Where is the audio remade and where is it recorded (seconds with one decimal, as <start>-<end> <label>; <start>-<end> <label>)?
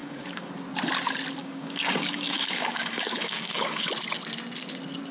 0.0-0.5 remade; 0.5-1.4 recorded; 1.4-3.9 remade; 3.9-5.1 recorded